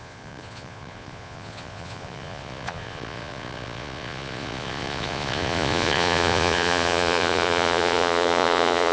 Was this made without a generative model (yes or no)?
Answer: no